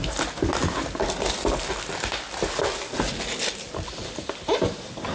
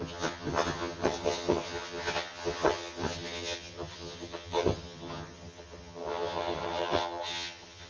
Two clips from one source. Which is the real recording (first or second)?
first